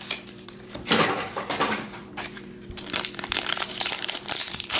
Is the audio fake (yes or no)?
yes